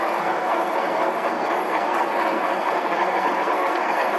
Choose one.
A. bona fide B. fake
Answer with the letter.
B